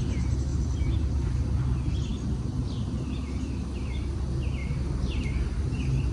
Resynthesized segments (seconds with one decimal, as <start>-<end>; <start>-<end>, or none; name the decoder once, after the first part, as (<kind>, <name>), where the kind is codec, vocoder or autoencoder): 0.5-1.3 (vocoder, BigVGAN v2); 4.6-5.2